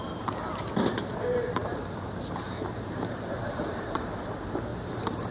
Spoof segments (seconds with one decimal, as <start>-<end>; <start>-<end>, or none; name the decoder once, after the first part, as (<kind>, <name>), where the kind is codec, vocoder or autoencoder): 1.6-4.2 (vocoder, BigVGAN v2); 4.7-5.3